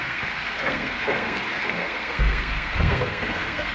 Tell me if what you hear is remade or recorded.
remade